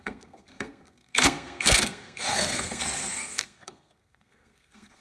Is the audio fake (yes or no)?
yes